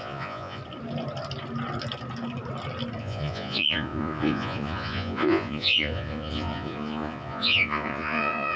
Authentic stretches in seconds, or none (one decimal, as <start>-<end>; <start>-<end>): 0.6-3.0